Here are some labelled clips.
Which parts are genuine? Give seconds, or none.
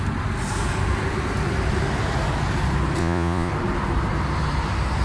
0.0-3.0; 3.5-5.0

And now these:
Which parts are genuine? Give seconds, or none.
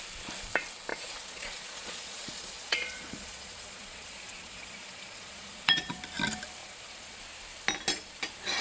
0.0-0.9; 6.0-6.6; 7.2-8.6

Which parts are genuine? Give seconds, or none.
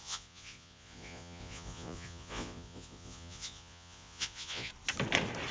4.7-5.5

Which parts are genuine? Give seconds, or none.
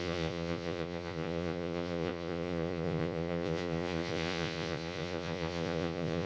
none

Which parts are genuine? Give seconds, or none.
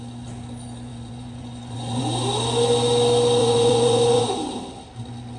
0.0-0.9; 2.0-3.4; 4.2-5.4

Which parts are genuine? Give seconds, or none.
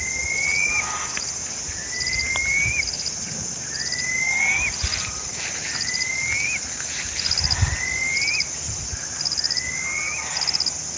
0.0-11.0